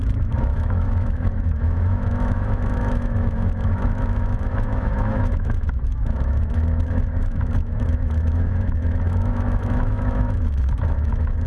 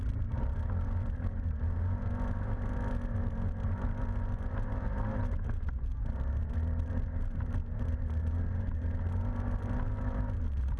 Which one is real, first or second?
second